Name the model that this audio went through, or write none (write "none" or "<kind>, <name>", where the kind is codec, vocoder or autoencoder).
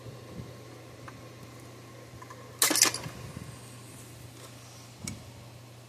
none